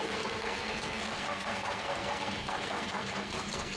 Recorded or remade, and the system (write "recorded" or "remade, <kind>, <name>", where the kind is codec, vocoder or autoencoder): remade, codec, SNAC